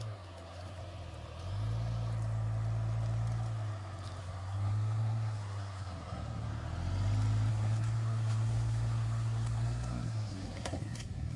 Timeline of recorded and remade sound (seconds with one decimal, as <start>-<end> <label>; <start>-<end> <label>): 0.0-0.8 remade; 0.8-4.2 recorded; 4.2-6.5 remade; 6.5-7.5 recorded; 7.5-11.4 remade